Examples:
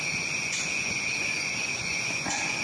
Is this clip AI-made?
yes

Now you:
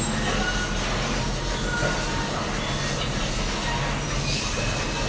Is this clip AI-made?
no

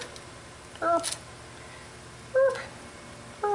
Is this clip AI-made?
no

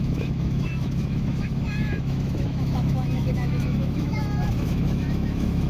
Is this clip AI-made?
yes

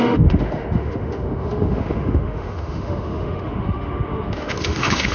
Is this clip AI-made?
yes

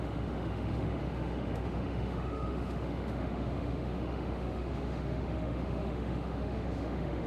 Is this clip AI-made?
yes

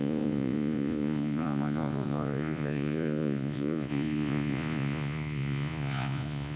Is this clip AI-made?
yes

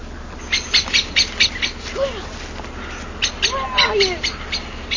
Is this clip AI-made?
no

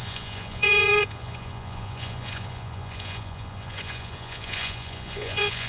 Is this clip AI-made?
yes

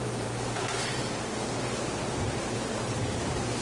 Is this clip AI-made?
yes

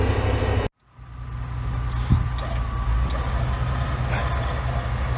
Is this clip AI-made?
no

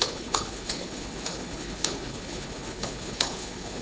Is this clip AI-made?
yes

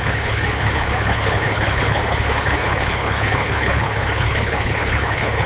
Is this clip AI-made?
yes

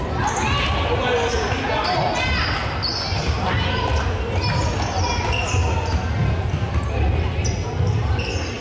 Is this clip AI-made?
no